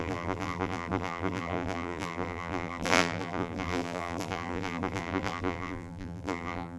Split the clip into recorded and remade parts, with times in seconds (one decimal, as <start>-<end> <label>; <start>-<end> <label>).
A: 0.0-6.8 remade

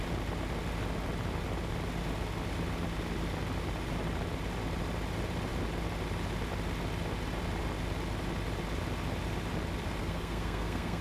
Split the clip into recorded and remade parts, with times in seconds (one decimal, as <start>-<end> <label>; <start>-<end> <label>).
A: 0.0-10.0 recorded; 10.0-11.0 remade

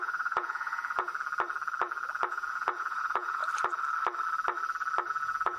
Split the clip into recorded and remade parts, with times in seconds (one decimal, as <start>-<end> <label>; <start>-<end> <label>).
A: 0.0-1.1 remade; 1.1-2.3 recorded; 2.3-3.4 remade; 3.4-5.1 recorded; 5.1-5.6 remade

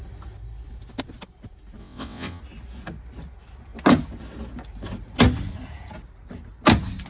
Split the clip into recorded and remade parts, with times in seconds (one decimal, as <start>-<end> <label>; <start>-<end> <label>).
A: 0.0-1.8 recorded; 1.8-2.4 remade; 2.4-7.1 recorded

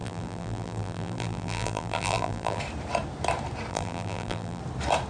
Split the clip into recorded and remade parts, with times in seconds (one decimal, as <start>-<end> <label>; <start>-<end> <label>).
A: 0.0-2.6 remade; 2.6-3.7 recorded; 3.7-4.6 remade; 4.6-5.1 recorded

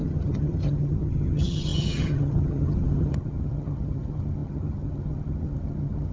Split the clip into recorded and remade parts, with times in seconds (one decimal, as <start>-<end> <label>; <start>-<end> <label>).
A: 0.0-6.1 remade